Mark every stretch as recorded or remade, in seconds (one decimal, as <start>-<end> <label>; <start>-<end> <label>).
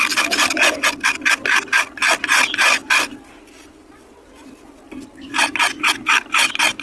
0.0-6.8 recorded